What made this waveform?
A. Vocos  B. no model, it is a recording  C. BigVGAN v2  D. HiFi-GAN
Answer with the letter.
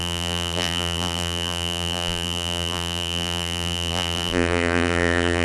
C